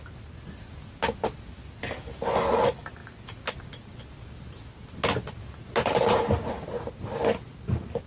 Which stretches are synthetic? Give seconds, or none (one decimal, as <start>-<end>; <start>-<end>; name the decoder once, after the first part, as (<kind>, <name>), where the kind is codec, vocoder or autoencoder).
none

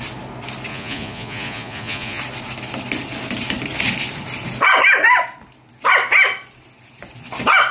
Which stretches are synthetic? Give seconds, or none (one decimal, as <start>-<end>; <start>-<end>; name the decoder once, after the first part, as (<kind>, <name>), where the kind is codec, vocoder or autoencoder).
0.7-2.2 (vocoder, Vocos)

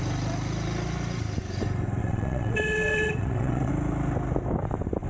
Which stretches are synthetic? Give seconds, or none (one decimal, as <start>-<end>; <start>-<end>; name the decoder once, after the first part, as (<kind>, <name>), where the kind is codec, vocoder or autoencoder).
2.0-3.7 (vocoder, WaveNeXt)

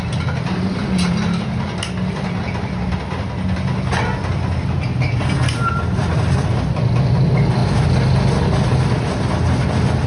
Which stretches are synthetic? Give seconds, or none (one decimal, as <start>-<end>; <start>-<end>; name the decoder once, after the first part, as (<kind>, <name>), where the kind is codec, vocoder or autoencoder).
none

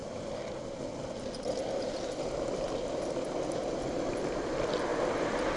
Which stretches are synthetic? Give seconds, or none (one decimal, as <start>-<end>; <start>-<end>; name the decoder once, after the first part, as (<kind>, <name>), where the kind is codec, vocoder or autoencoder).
none

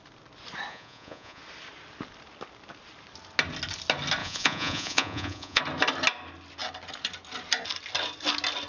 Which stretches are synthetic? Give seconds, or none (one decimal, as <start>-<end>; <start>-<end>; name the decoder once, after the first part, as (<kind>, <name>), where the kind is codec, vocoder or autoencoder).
0.7-1.4 (vocoder, Vocos); 4.2-5.6

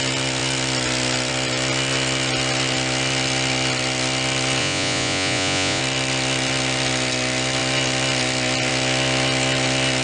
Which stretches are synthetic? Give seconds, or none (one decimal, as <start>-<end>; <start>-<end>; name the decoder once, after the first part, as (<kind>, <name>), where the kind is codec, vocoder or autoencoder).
4.6-5.8 (vocoder, Vocos)